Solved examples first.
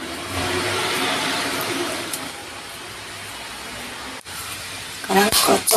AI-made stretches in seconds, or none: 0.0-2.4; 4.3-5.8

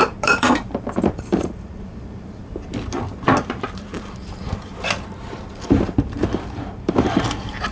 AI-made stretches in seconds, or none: 0.0-2.4; 3.4-4.7; 5.5-7.7

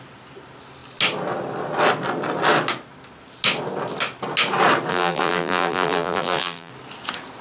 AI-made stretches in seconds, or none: 4.9-6.7